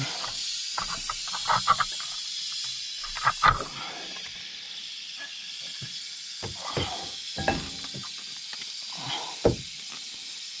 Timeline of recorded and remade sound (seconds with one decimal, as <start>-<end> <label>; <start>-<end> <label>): 0.0-10.6 recorded